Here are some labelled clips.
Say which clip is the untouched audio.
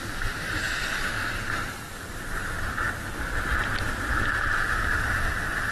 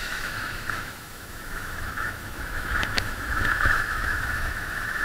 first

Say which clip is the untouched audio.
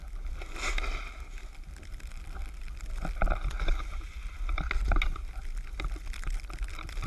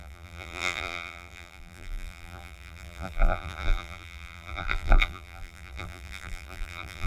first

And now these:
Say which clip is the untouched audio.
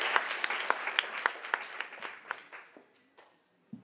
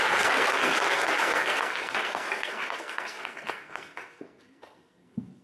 first